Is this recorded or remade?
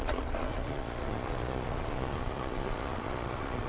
remade